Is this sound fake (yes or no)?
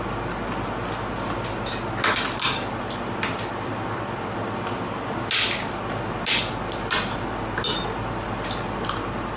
no